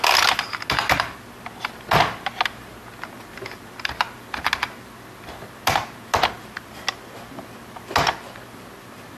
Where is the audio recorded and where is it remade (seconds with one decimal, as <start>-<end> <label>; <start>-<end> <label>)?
0.0-9.2 recorded